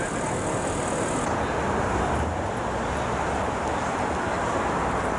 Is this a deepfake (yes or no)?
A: no